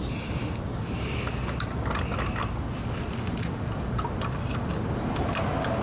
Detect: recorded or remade recorded